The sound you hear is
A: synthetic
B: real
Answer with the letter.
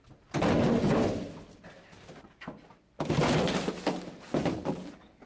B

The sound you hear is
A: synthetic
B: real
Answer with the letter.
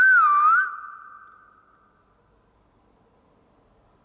B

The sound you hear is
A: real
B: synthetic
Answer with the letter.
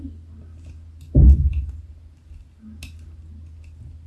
A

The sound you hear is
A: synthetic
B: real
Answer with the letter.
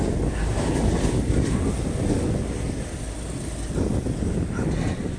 B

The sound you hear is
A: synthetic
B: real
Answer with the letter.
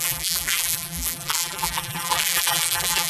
A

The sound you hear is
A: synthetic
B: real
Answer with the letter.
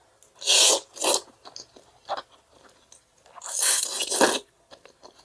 B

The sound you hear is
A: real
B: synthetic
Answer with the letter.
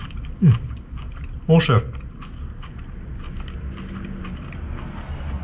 A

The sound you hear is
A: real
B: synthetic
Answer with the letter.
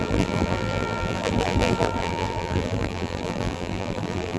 B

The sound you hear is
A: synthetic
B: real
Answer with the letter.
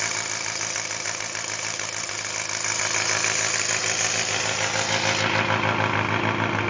B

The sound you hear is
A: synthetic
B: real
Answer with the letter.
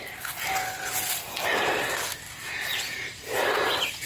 B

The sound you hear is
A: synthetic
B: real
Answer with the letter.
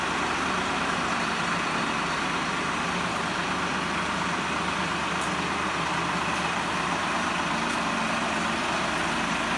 A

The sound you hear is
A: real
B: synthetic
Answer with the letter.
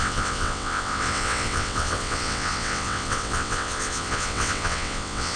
B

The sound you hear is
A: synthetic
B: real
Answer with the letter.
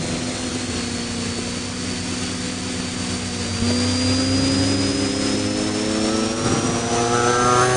B